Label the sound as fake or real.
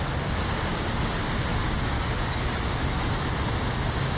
real